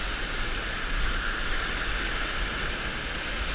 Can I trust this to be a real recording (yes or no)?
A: yes